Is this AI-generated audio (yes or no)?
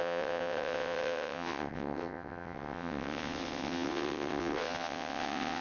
yes